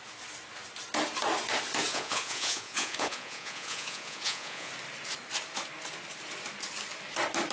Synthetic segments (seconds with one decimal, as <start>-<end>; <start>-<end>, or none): 1.9-4.7

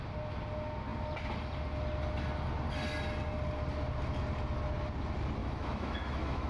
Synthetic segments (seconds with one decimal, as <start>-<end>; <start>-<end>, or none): 5.4-6.5

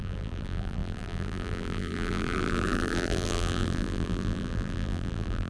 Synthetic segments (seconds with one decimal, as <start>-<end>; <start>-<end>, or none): 0.0-5.5

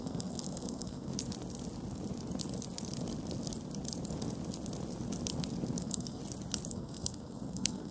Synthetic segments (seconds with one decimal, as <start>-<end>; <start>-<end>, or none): 0.0-1.1; 5.8-6.2; 6.7-7.9

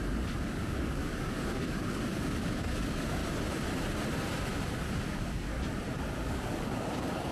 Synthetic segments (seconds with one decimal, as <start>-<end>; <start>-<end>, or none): 0.0-3.2; 4.5-5.5; 6.1-7.3

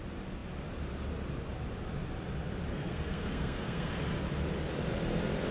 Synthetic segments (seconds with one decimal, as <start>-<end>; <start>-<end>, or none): 2.7-3.9

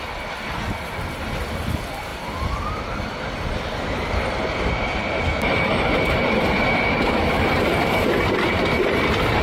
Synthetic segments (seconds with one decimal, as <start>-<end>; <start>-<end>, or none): 0.0-9.4